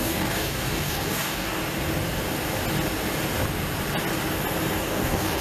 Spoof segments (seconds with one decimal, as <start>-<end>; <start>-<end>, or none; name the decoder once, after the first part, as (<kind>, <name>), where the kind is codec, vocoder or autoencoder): 0.0-1.6 (codec, DAC); 4.8-5.4